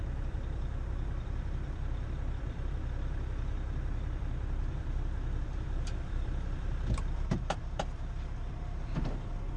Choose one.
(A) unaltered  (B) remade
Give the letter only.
B